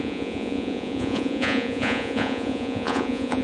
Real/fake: fake